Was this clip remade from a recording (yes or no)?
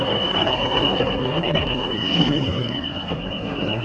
yes